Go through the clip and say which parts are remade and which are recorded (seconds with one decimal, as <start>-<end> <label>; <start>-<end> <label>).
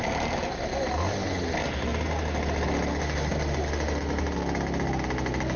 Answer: 0.0-5.6 recorded